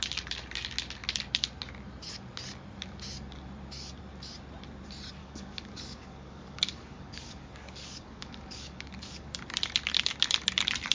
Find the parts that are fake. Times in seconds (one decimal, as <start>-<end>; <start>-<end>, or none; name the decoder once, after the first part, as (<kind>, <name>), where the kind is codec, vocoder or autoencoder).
5.2-9.4 (codec, DAC)